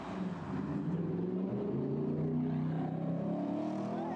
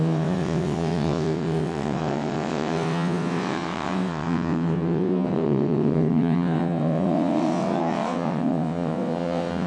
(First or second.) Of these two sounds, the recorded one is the first